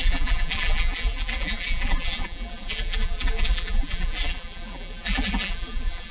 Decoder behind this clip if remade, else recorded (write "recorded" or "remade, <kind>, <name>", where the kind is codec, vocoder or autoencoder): remade, vocoder, BigVGAN v2